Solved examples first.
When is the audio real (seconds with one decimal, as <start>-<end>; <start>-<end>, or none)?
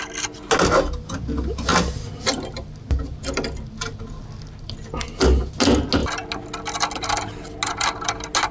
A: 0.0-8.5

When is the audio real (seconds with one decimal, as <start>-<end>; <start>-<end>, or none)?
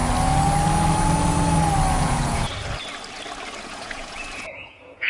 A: 0.0-2.0; 2.5-3.6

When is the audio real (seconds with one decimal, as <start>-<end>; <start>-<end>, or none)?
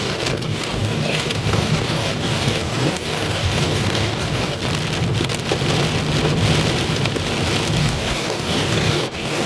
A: 4.6-7.8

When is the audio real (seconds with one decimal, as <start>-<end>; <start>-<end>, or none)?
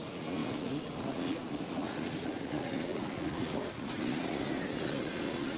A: none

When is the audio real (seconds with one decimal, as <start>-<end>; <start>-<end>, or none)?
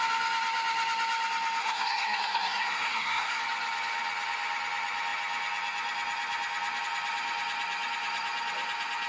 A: 0.0-1.6; 3.4-9.1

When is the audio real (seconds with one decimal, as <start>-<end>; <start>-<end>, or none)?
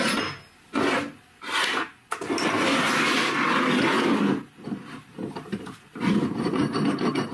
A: 0.0-7.3